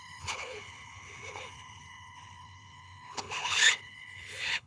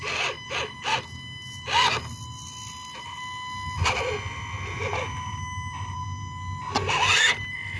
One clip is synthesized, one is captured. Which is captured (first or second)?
second